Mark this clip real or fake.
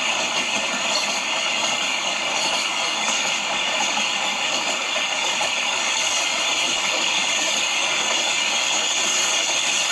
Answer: fake